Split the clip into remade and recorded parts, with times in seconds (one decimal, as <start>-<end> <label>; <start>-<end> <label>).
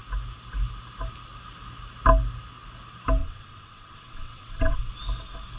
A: 0.0-3.2 recorded; 3.2-4.9 remade; 4.9-5.6 recorded